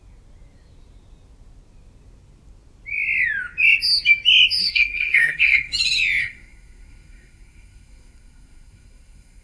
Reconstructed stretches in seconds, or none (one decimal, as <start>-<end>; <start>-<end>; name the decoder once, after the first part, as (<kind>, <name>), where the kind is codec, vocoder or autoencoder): 4.6-5.7 (codec, SNAC); 6.2-9.4